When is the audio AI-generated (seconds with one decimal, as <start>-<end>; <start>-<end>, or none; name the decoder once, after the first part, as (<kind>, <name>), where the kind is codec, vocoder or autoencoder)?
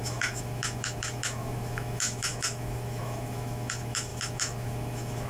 0.0-5.3 (autoencoder, DAC-VAE)